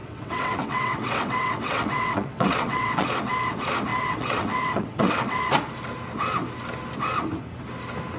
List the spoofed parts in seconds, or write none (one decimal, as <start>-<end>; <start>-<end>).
0.0-3.1; 3.9-5.4